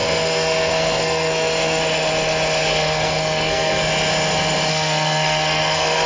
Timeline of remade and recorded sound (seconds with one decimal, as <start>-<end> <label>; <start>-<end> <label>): 0.0-1.8 remade; 1.8-2.6 recorded; 2.6-3.8 remade; 3.8-4.7 recorded; 4.7-6.1 remade